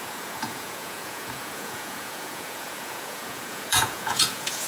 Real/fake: fake